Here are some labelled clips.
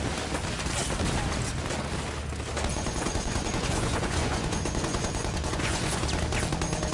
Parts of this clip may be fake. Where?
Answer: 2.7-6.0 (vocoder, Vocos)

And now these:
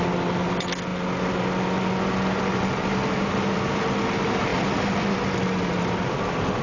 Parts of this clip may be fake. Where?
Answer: none

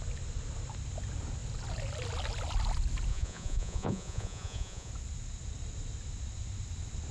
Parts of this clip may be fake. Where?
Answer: 3.1-4.9 (vocoder, Vocos)

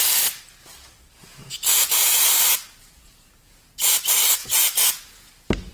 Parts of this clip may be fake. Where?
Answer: 1.2-1.9 (vocoder, Vocos); 2.8-4.0; 4.4-5.3

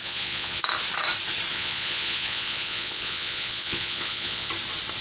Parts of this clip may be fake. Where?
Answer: 0.0-0.6 (vocoder, Vocos); 1.5-4.5

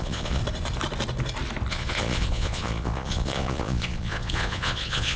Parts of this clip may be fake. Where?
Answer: 0.0-0.4 (vocoder, Vocos); 1.7-5.2

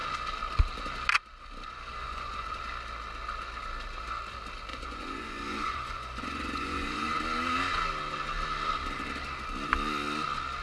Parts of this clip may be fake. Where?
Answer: 1.9-2.6 (vocoder, Vocos); 4.7-7.1